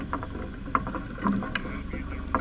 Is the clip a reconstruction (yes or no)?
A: no